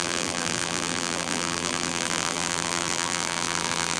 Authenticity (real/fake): fake